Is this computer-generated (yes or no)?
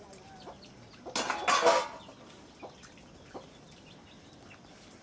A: no